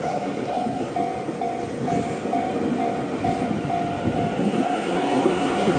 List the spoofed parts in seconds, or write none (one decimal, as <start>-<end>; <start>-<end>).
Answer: 0.0-0.9; 4.4-5.8